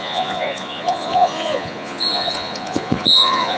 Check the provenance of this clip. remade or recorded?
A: remade